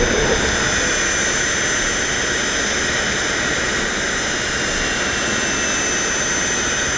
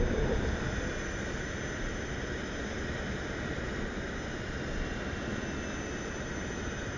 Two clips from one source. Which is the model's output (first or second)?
second